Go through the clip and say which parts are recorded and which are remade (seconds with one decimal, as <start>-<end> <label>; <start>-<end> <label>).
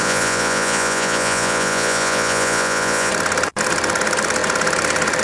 0.0-3.1 remade; 3.1-5.2 recorded